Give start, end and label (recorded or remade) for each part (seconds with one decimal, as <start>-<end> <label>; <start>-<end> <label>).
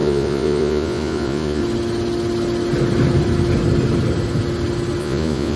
0.0-1.6 remade; 1.6-5.0 recorded; 5.0-5.6 remade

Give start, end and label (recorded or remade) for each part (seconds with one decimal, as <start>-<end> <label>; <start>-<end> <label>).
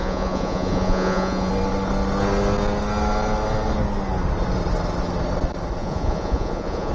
0.0-1.5 remade; 1.5-5.8 recorded; 5.8-6.9 remade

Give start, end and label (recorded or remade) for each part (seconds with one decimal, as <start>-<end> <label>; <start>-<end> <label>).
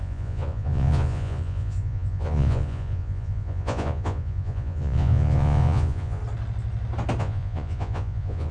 0.0-6.2 remade; 6.2-7.2 recorded; 7.2-8.5 remade